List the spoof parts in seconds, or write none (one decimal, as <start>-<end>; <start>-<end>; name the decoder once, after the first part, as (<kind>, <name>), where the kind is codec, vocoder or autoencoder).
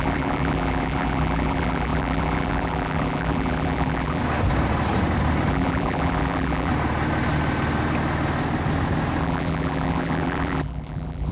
0.0-4.2 (vocoder, BigVGAN v2); 5.5-6.7; 9.2-11.3